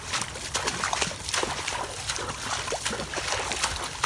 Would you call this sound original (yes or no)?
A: yes